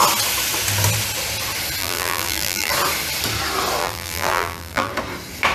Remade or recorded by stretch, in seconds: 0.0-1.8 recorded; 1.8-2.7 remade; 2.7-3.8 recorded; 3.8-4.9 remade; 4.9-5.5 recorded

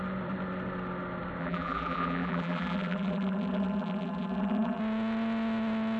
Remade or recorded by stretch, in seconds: 0.0-1.4 recorded; 1.4-4.8 remade; 4.8-6.0 recorded